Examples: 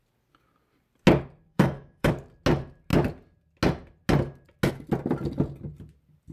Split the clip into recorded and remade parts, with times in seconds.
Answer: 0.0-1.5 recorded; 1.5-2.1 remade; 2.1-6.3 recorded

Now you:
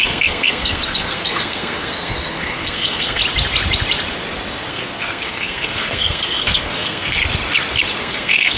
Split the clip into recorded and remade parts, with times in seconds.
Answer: 0.0-3.2 remade; 3.2-4.7 recorded; 4.7-7.2 remade; 7.2-8.0 recorded; 8.0-8.6 remade

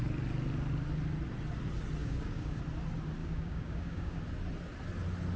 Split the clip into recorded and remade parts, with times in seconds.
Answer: 0.0-2.0 recorded; 2.0-2.6 remade; 2.6-3.2 recorded; 3.2-4.2 remade; 4.2-5.4 recorded